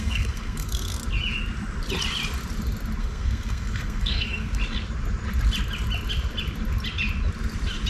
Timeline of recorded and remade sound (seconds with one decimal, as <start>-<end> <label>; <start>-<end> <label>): 0.0-1.0 remade; 1.0-3.0 recorded; 3.0-4.5 remade; 4.5-7.9 recorded